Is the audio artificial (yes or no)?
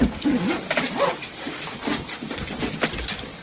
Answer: no